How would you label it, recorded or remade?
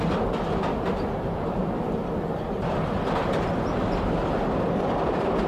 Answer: recorded